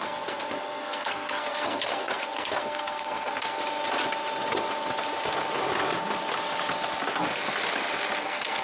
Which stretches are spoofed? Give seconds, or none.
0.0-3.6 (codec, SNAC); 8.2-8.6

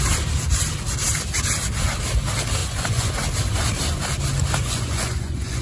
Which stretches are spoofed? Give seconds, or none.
2.6-3.1 (vocoder, Vocos); 4.6-5.6

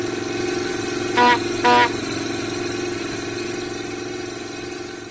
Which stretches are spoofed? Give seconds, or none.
none

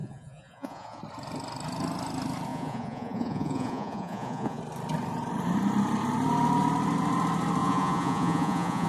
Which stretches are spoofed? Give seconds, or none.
0.0-1.0 (vocoder, Vocos); 2.5-4.6; 7.6-8.9